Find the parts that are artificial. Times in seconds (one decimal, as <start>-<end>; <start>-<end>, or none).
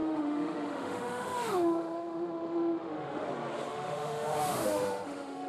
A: 0.0-3.3; 3.7-5.5